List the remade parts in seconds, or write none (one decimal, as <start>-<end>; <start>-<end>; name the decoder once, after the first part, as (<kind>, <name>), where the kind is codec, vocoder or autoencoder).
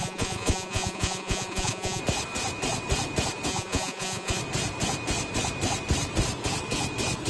0.0-2.0 (vocoder, Vocos); 3.5-4.4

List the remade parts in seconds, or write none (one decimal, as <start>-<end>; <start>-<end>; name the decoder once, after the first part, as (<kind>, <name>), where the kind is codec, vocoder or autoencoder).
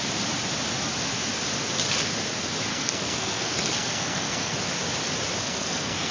2.7-4.6 (codec, SNAC); 5.4-6.1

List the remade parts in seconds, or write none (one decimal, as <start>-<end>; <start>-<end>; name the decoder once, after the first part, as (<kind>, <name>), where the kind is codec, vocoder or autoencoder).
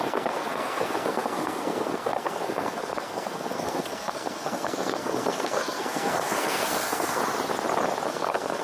0.0-7.2 (codec, SNAC); 8.1-8.6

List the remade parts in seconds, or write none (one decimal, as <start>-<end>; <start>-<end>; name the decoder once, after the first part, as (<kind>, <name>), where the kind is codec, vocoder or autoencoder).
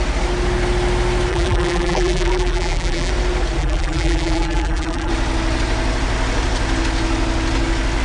1.3-3.1 (vocoder, BigVGAN v2); 3.6-5.1